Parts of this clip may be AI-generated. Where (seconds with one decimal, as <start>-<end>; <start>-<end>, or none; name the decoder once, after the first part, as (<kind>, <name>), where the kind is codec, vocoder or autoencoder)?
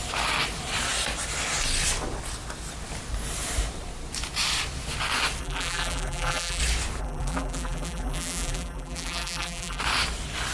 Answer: 5.4-6.6 (vocoder, BigVGAN v2); 7.0-9.8